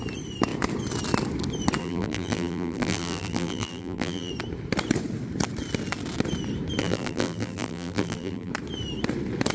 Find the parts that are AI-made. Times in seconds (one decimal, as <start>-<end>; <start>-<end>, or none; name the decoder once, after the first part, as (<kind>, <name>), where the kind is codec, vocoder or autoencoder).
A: 1.8-4.3 (vocoder, BigVGAN v2); 6.8-8.5